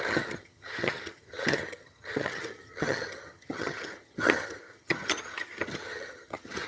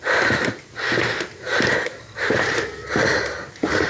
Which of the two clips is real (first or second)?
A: second